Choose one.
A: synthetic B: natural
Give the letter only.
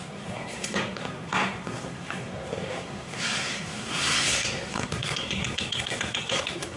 A